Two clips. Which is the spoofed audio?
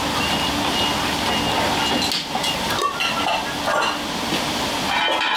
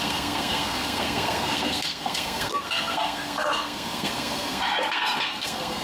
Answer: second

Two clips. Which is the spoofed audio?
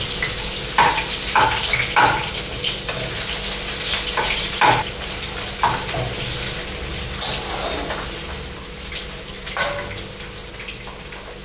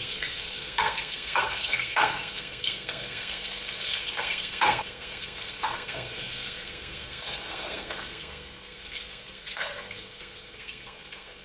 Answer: second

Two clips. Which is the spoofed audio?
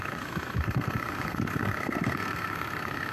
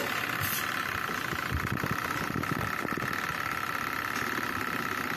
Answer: first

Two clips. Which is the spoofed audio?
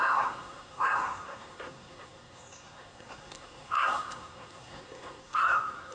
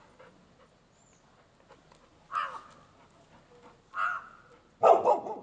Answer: first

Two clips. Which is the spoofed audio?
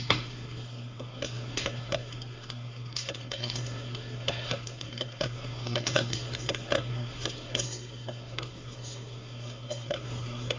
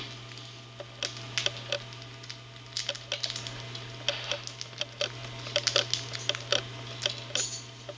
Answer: first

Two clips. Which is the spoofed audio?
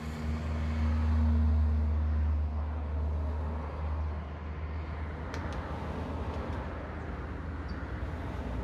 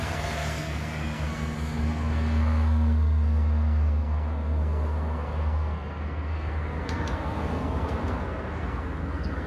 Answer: second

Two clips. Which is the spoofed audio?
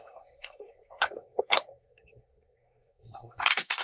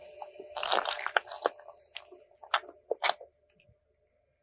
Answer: first